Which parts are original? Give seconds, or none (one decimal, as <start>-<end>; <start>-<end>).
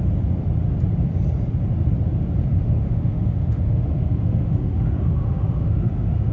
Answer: 0.0-2.5